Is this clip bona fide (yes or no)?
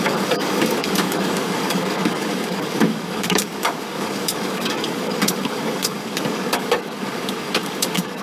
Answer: no